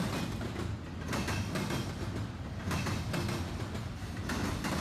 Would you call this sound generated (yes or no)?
no